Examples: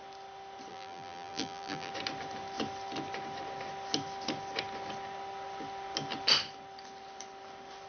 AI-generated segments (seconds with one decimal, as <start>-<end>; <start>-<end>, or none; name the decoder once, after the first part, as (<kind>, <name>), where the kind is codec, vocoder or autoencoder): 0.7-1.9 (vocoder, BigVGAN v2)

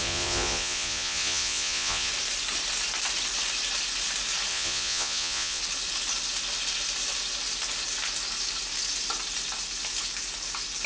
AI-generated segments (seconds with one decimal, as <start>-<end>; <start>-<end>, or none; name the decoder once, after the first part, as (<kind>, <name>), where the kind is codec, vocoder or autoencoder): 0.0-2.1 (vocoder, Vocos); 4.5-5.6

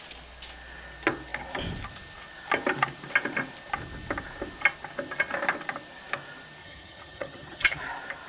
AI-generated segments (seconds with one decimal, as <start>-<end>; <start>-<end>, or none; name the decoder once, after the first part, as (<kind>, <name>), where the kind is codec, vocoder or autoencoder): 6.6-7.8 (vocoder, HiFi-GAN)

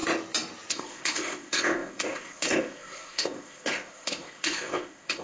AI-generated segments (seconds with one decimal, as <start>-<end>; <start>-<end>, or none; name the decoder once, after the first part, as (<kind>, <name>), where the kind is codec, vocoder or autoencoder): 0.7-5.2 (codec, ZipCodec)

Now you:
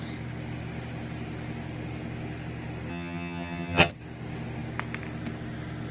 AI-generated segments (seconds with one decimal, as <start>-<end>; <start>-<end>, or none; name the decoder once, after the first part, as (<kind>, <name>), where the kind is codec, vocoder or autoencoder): 2.9-3.9 (vocoder, HiFi-GAN)

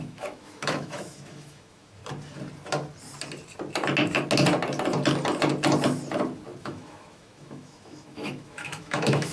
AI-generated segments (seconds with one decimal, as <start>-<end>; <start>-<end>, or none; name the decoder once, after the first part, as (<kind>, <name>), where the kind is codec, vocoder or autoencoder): 0.0-2.0 (autoencoder, DAC-VAE); 6.6-9.3

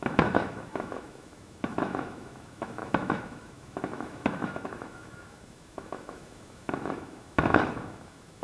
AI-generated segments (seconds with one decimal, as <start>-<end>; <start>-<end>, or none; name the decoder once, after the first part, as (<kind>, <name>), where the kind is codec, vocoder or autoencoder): 0.0-8.4 (autoencoder, DAC-VAE)

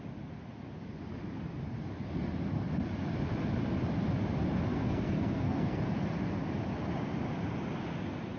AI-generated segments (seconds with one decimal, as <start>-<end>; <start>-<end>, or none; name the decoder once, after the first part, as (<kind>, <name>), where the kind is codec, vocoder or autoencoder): 4.7-5.8 (codec, SNAC)